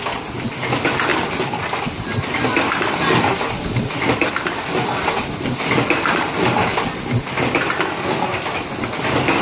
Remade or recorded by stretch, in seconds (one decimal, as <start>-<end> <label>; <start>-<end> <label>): 0.0-1.1 recorded; 1.1-6.3 remade; 6.3-6.7 recorded; 6.7-7.3 remade; 7.3-9.4 recorded